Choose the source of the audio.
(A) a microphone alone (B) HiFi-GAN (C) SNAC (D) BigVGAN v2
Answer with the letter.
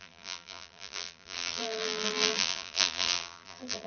D